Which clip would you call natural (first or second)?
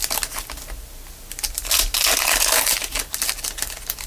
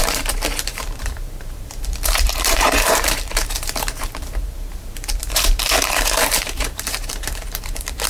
first